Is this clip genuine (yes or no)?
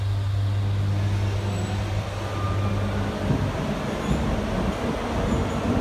yes